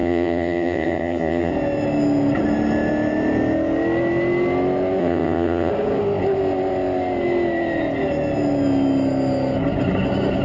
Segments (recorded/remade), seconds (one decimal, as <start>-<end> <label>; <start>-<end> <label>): 0.0-1.5 remade; 1.5-5.0 recorded; 5.0-5.7 remade; 5.7-10.4 recorded